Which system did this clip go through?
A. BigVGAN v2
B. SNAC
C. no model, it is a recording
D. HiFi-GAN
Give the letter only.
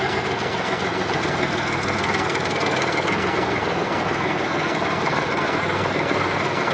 B